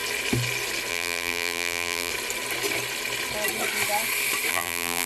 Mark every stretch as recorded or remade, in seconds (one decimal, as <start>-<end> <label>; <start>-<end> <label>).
0.0-0.9 recorded; 0.9-2.1 remade; 2.1-4.5 recorded; 4.5-5.1 remade